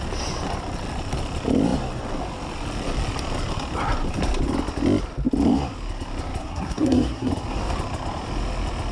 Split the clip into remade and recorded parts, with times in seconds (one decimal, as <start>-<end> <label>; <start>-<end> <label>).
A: 0.0-6.4 recorded; 6.4-7.3 remade; 7.3-8.9 recorded